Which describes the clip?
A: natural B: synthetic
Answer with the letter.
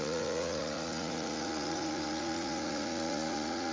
B